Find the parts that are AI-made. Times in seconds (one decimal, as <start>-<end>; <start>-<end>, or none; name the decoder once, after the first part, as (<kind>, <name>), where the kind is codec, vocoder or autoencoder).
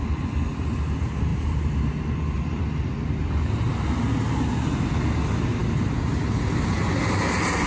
none